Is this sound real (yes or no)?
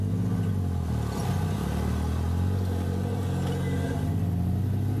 yes